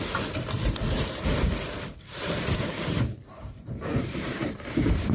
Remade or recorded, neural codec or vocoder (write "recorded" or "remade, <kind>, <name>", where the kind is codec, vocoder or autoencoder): remade, vocoder, BigVGAN v2